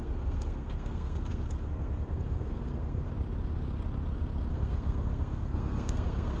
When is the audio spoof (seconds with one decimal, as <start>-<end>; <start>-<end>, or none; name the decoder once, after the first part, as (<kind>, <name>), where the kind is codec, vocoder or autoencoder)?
0.0-3.1 (codec, SNAC); 4.5-6.4